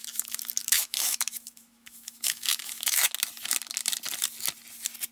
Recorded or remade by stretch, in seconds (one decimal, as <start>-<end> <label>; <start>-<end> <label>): 0.0-3.1 remade; 3.1-5.1 recorded